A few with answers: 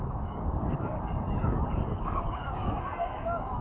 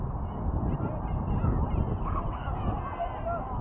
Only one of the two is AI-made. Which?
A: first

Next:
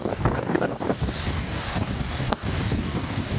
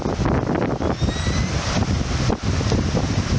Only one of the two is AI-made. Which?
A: first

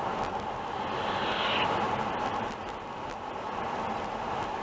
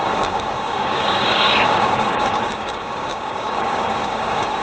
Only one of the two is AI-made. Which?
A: second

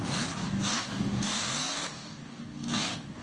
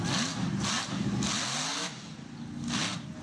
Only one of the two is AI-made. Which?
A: first